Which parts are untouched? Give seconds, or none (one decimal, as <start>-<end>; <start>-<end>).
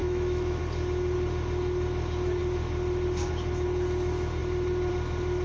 0.6-5.4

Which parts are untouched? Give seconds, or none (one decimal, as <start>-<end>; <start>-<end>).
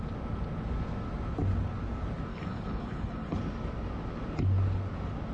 0.0-2.3; 3.4-5.3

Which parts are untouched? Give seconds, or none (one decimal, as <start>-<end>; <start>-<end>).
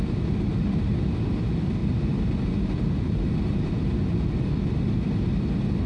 0.0-5.9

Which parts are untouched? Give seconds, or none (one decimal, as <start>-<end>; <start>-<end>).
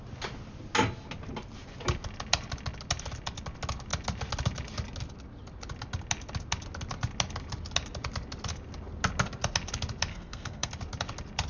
0.0-10.1; 10.7-11.5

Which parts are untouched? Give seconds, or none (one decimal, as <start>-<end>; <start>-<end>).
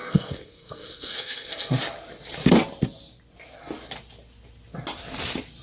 1.7-5.6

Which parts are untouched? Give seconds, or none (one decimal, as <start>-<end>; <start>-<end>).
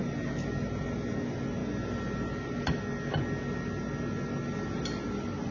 0.0-5.5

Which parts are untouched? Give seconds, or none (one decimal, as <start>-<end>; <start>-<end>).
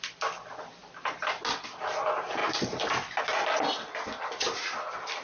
0.0-5.2